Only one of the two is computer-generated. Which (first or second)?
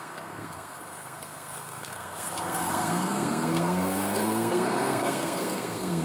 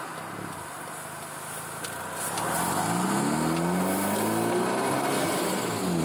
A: first